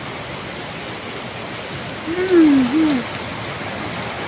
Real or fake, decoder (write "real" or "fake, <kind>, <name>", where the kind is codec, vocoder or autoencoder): real